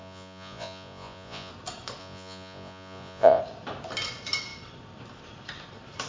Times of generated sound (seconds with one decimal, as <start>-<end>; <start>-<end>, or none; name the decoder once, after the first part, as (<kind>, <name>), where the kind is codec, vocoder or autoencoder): 0.0-1.5 (vocoder, Vocos); 2.0-3.4